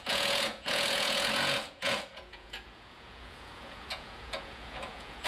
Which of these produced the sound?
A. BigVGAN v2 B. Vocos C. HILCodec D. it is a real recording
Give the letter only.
B